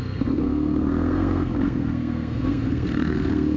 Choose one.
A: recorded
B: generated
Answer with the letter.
B